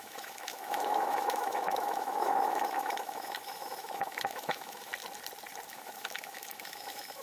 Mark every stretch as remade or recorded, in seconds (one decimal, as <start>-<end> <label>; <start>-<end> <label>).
0.0-4.9 remade; 4.9-5.7 recorded; 5.7-7.2 remade